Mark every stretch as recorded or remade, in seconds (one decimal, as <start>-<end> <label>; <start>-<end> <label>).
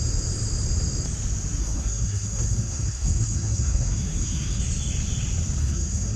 0.0-1.6 recorded; 1.6-4.6 remade; 4.6-5.6 recorded; 5.6-6.2 remade